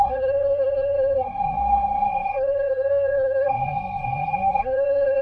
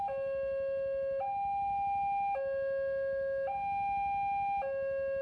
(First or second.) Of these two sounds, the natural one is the second